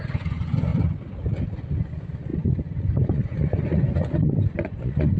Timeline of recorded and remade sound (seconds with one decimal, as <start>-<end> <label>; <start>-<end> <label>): 0.0-0.7 remade; 0.7-1.9 recorded; 1.9-2.3 remade; 2.3-2.8 recorded; 2.8-5.2 remade